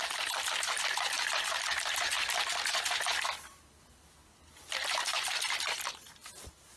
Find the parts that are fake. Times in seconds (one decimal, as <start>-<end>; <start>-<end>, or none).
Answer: 0.0-2.1; 5.1-5.9